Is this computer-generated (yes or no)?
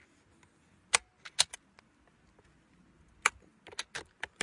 no